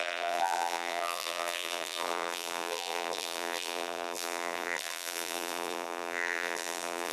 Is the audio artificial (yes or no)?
yes